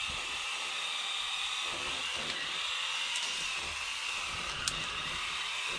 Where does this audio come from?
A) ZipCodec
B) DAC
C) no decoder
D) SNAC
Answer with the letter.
C